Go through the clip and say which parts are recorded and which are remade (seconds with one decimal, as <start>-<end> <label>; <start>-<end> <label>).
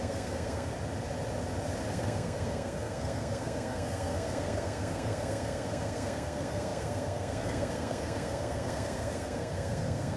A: 0.0-0.7 remade; 0.7-1.9 recorded; 1.9-10.2 remade